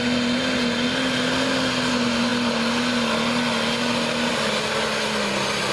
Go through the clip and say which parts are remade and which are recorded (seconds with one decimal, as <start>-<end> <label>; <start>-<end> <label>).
0.0-5.7 recorded

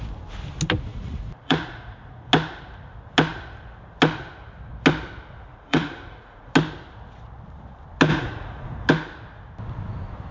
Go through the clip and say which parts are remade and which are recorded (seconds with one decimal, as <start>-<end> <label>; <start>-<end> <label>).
0.0-0.9 recorded; 0.9-2.3 remade; 2.3-5.5 recorded; 5.5-6.5 remade; 6.5-8.1 recorded; 8.1-8.9 remade; 8.9-10.3 recorded

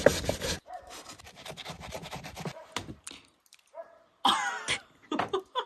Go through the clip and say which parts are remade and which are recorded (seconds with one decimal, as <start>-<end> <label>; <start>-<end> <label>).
0.0-5.7 recorded

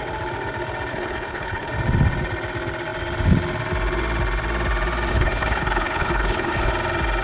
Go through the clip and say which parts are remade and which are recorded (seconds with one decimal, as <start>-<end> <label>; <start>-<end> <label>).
0.0-0.9 recorded; 0.9-1.7 remade; 1.7-5.1 recorded; 5.1-6.7 remade; 6.7-7.2 recorded

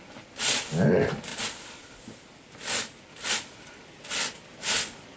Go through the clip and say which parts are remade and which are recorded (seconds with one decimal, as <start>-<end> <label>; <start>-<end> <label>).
0.0-5.2 recorded

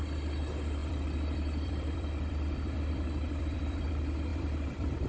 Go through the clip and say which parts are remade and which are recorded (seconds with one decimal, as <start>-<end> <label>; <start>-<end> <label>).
0.0-0.8 recorded; 0.8-3.9 remade; 3.9-4.3 recorded; 4.3-5.1 remade